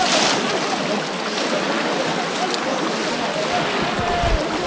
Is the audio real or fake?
real